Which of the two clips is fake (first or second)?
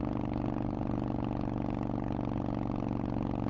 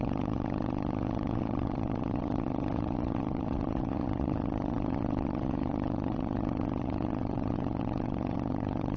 second